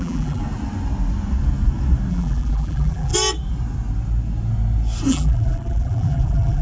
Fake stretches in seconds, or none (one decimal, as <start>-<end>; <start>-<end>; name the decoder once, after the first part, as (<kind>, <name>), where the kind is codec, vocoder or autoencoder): 0.0-0.4 (vocoder, BigVGAN v2); 2.1-3.1; 5.1-6.6